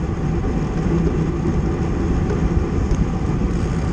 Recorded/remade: recorded